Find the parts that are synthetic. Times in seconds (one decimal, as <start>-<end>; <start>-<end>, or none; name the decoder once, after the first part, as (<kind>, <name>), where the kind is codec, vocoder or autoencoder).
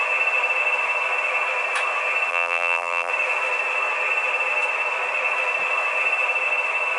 2.3-3.1 (vocoder, BigVGAN v2)